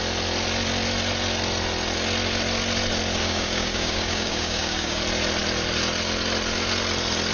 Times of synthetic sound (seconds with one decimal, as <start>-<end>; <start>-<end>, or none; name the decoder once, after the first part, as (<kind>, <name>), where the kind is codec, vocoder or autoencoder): 3.2-5.0 (codec, DAC)